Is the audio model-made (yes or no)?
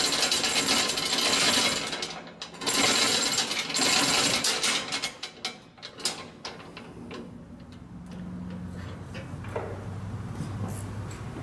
no